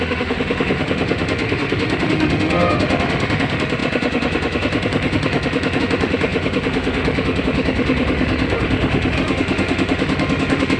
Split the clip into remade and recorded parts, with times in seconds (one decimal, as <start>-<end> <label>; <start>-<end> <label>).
0.0-10.8 remade